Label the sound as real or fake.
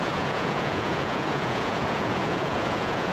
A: fake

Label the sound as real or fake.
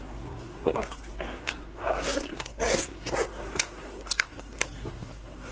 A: fake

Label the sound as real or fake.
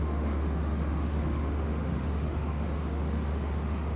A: fake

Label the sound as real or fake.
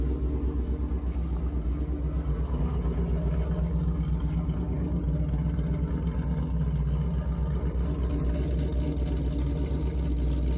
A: real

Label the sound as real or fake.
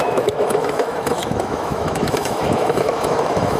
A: fake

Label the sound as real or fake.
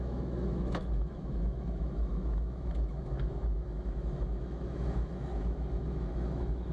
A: fake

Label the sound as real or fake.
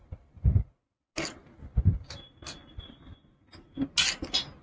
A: real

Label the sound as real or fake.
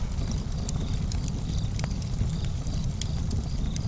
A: real